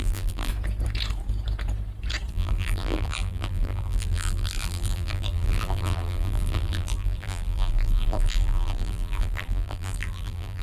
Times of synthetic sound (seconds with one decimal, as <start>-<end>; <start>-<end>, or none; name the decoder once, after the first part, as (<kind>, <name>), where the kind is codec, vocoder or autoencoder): 0.0-0.5 (vocoder, BigVGAN v2); 2.3-10.6